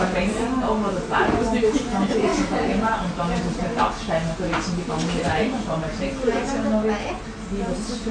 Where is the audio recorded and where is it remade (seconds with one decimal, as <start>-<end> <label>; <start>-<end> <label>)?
0.0-2.3 recorded; 2.3-3.8 remade; 3.8-8.1 recorded